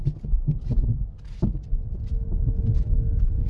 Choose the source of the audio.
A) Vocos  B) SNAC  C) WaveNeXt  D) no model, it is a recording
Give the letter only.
D